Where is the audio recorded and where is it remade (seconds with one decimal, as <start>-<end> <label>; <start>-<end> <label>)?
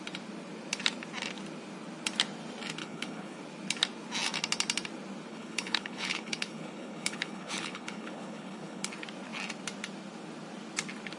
0.0-2.8 recorded; 2.8-3.4 remade; 3.4-5.3 recorded; 5.3-8.9 remade; 8.9-11.2 recorded